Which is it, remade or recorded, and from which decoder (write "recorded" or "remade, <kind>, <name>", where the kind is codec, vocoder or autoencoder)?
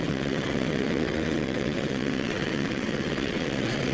remade, vocoder, WaveNeXt